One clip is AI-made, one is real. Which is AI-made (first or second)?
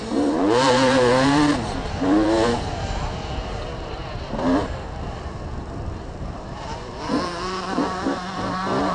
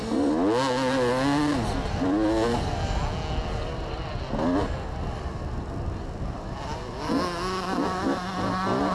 first